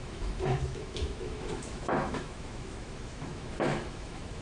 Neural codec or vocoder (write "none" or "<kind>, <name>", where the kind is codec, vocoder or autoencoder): autoencoder, DAC-VAE